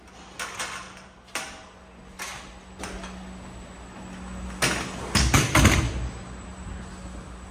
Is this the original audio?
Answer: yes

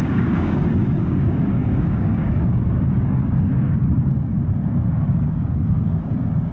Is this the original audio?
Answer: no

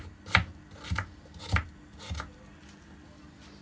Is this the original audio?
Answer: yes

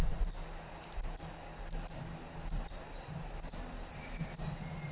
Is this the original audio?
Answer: yes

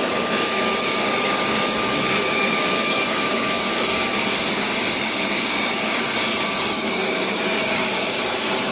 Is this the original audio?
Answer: no